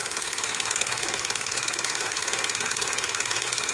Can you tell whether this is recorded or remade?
remade